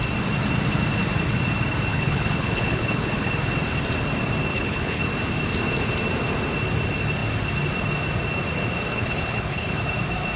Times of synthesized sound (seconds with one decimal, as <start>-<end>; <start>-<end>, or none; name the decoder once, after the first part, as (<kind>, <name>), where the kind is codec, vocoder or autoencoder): 1.9-3.3 (codec, HILCodec); 4.5-5.0; 8.9-9.8